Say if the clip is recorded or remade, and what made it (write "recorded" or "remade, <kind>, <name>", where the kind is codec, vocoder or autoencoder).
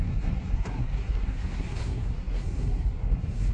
remade, codec, SNAC